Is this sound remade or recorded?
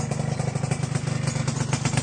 recorded